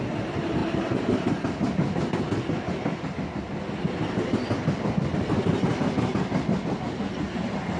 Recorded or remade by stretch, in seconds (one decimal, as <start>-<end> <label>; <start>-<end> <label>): 0.0-7.8 recorded